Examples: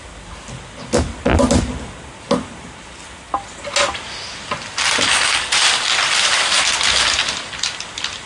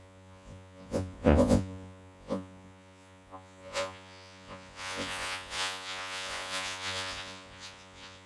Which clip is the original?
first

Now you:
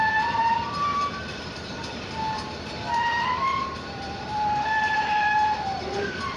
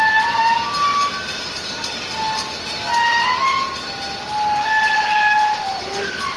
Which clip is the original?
second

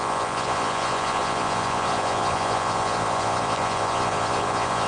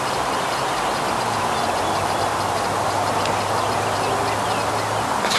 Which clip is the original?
second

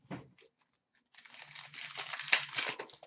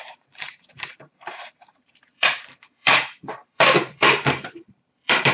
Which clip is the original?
first